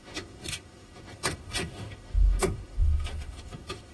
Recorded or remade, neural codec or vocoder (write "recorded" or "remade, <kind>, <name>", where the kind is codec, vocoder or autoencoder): remade, autoencoder, DAC-VAE